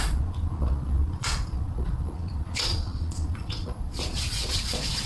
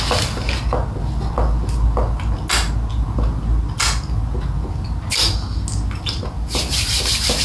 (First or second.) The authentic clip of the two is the second